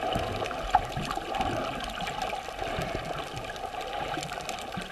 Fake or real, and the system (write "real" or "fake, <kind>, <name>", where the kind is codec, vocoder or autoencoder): real